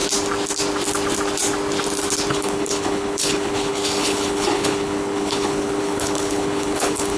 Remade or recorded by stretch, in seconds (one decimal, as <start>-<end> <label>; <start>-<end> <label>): 0.0-2.3 recorded; 2.3-7.2 remade